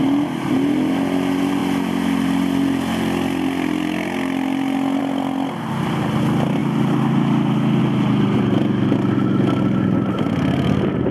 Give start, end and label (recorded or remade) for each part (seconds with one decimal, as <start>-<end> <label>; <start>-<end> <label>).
0.0-11.1 recorded